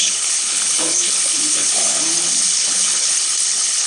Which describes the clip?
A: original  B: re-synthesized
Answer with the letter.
B